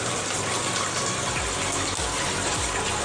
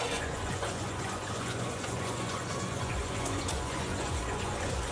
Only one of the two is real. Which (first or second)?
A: first